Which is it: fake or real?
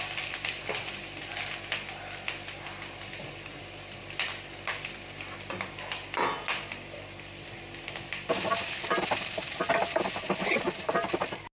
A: real